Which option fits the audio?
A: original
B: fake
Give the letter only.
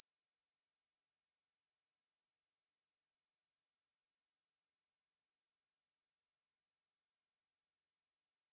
A